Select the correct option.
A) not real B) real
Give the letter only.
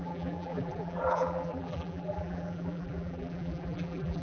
A